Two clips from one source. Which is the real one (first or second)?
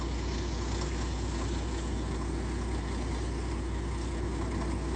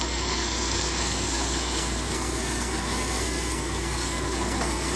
first